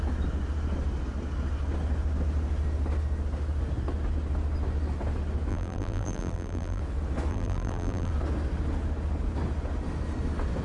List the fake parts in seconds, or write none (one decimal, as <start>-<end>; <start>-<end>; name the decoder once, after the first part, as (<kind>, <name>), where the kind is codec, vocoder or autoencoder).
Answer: 5.5-6.8 (vocoder, BigVGAN v2); 7.3-8.1